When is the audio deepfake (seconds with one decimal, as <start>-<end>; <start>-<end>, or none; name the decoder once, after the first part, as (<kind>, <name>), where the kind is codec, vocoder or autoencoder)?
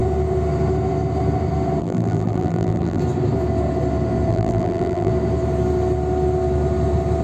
1.8-3.0 (vocoder, BigVGAN v2); 4.3-5.1